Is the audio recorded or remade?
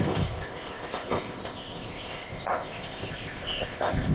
remade